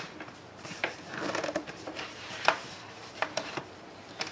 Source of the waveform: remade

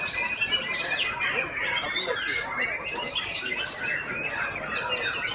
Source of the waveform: recorded